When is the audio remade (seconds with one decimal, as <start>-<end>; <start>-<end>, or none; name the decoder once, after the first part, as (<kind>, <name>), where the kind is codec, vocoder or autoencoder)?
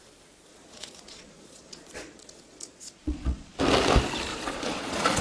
0.5-3.6 (vocoder, Vocos); 4.3-5.2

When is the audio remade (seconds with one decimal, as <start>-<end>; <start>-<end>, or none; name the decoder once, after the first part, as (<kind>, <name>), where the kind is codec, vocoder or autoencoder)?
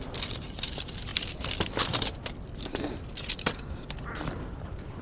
0.0-5.0 (vocoder, BigVGAN v2)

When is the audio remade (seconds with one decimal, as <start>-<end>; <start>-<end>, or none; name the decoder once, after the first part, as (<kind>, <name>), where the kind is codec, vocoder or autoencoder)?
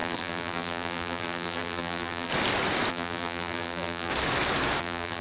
0.0-2.3 (vocoder, BigVGAN v2); 2.9-4.1; 4.8-5.2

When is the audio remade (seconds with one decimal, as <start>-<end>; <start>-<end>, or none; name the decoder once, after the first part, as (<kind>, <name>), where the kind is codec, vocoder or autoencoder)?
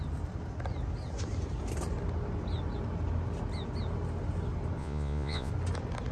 4.8-5.5 (vocoder, Vocos)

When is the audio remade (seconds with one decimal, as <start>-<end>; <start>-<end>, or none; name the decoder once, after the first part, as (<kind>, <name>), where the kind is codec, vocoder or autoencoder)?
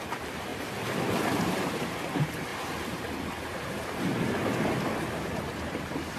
0.0-0.5 (vocoder, BigVGAN v2); 1.3-2.5; 3.5-4.5; 5.8-6.2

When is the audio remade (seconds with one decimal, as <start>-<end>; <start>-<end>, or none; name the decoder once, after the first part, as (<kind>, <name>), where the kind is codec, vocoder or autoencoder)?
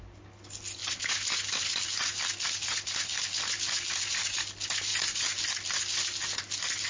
none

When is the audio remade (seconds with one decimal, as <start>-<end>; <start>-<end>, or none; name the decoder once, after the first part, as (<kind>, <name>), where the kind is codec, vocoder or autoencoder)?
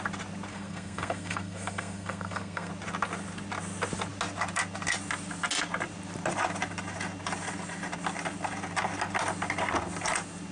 0.5-2.7 (codec, SNAC)